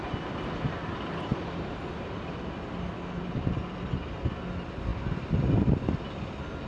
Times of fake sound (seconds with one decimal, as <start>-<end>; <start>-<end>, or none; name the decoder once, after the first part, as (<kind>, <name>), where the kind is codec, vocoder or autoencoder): none